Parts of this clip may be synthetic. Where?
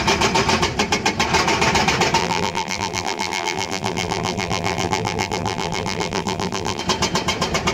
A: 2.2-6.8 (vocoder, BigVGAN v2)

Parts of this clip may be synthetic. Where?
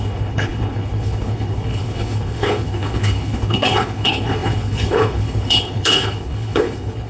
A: 0.0-7.1 (codec, HILCodec)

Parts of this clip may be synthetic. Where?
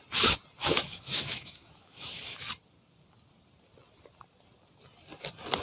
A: 0.6-2.5 (autoencoder, DAC-VAE)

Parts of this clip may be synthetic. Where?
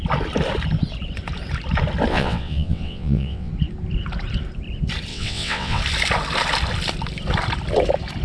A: 2.1-3.5 (vocoder, WaveNeXt); 5.1-5.8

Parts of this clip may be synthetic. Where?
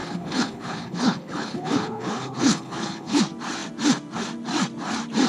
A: 0.0-3.2 (codec, HILCodec)